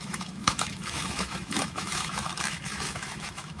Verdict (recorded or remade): remade